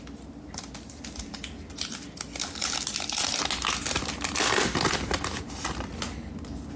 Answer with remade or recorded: recorded